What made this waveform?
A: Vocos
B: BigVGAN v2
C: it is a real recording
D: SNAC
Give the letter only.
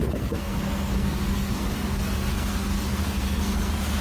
D